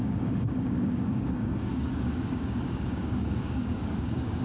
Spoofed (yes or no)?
yes